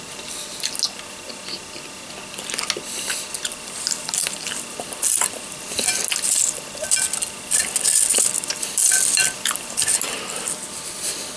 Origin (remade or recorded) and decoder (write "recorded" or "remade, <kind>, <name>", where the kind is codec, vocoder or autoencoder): recorded